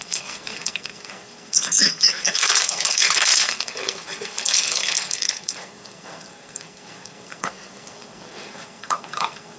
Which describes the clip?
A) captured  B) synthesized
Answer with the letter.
B